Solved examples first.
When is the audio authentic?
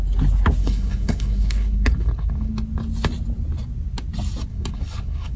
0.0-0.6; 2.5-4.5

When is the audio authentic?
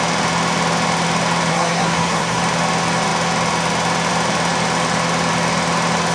0.0-1.5; 2.4-6.1